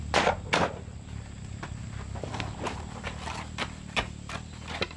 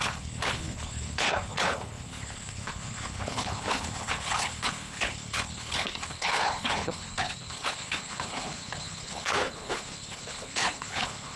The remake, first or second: second